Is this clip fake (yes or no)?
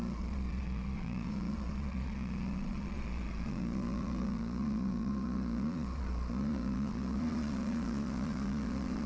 yes